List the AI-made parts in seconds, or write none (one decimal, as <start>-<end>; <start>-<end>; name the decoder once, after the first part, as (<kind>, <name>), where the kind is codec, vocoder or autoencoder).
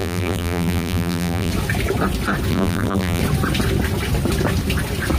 0.0-1.5 (vocoder, BigVGAN v2); 2.5-3.2